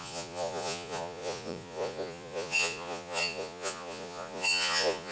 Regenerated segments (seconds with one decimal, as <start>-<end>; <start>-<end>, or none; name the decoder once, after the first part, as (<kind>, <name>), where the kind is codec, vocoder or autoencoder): 0.0-5.1 (vocoder, Vocos)